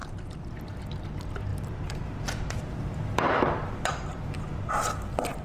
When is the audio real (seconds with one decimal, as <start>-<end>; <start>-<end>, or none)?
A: 0.6-1.5; 4.7-5.4